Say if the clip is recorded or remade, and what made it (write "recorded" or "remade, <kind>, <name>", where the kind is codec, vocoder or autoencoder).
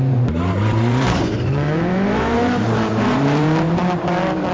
remade, vocoder, BigVGAN v2